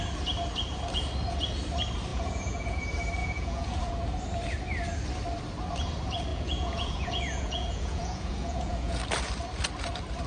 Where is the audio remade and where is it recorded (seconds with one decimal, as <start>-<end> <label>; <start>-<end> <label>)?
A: 0.0-2.1 recorded; 2.1-2.8 remade; 2.8-3.2 recorded; 3.2-3.9 remade; 3.9-6.3 recorded; 6.3-9.0 remade; 9.0-10.3 recorded